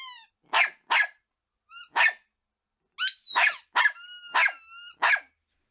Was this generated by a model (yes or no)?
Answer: no